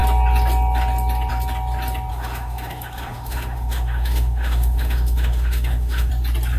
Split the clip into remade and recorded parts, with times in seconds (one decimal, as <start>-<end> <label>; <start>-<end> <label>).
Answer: 0.0-2.1 recorded; 2.1-6.1 remade; 6.1-6.6 recorded